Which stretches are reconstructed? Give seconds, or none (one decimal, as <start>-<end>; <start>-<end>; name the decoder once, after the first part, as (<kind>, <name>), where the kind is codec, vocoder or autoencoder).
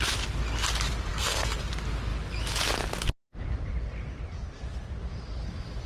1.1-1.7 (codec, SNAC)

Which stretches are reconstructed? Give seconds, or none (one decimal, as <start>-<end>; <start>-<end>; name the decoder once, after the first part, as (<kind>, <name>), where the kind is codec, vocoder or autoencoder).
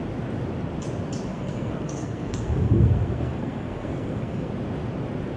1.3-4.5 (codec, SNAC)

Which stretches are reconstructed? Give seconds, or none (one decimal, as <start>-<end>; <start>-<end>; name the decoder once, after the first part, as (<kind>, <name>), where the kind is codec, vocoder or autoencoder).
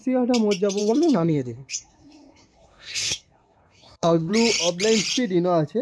0.8-4.3 (codec, SNAC)